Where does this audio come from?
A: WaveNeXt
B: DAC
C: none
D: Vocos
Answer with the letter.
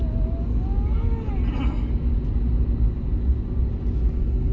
C